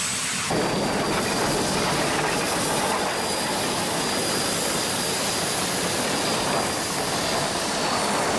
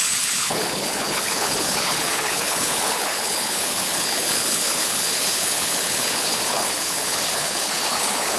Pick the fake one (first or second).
second